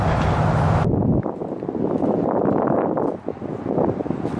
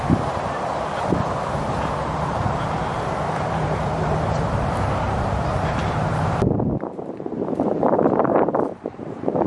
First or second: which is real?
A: first